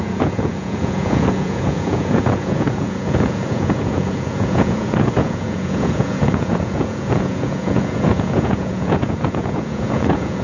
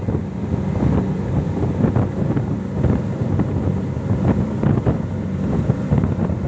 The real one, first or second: second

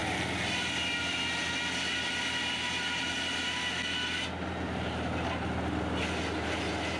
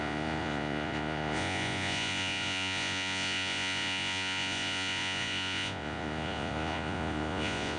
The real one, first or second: first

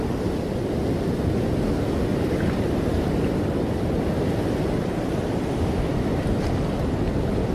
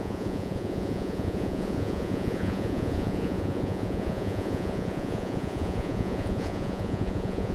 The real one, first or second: first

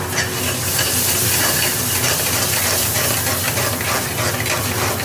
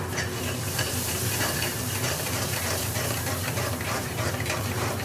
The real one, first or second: first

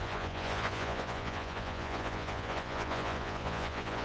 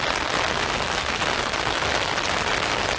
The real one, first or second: second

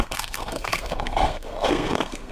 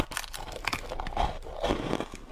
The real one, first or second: second